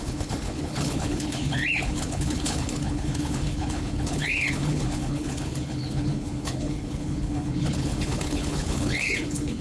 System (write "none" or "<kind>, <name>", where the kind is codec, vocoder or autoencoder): codec, HILCodec